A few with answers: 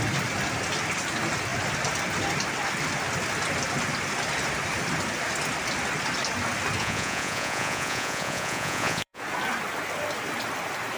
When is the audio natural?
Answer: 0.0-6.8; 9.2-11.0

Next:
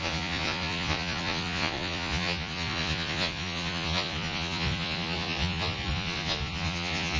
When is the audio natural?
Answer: none

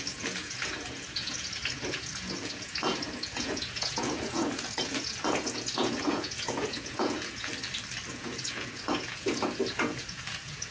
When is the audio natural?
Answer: 7.5-8.1

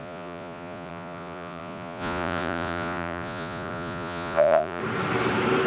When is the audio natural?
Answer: 4.8-5.7

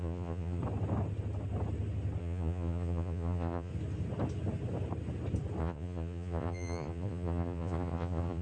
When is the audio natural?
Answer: 0.6-2.2; 3.7-5.6

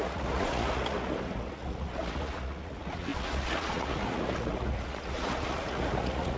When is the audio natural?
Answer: none